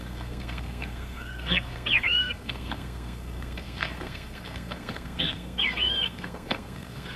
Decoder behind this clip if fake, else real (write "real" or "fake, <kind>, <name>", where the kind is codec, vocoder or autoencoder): fake, codec, SNAC